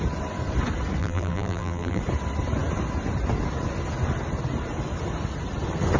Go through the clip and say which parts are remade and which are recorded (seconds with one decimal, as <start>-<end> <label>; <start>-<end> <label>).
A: 0.0-1.0 recorded; 1.0-2.0 remade; 2.0-6.0 recorded